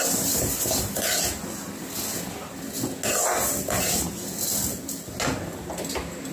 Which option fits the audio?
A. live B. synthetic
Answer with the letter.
A